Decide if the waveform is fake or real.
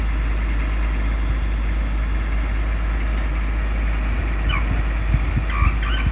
real